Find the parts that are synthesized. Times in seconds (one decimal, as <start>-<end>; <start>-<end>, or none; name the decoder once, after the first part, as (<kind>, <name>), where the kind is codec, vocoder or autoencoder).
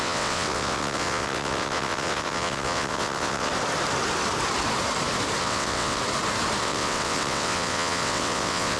0.0-3.5 (vocoder, WaveNeXt); 5.4-6.0; 6.6-8.8